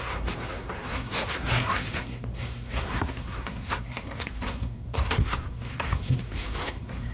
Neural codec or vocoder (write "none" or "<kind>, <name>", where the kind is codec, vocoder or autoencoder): codec, SNAC